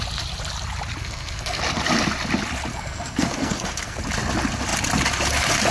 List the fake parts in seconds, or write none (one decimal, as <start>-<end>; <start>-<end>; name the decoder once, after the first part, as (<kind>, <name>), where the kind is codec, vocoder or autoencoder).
1.0-1.6 (codec, SNAC); 2.7-4.0